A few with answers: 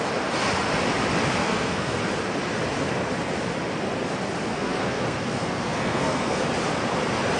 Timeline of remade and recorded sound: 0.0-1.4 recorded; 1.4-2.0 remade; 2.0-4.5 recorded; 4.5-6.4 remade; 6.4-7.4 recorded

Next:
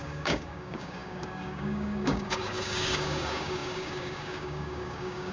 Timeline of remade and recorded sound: 0.0-5.3 remade

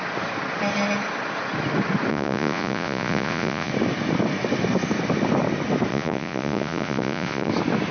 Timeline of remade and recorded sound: 0.0-2.1 recorded; 2.1-3.7 remade; 3.7-5.9 recorded; 5.9-7.5 remade; 7.5-7.9 recorded

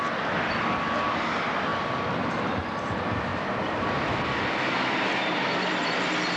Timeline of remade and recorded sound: 0.0-6.4 recorded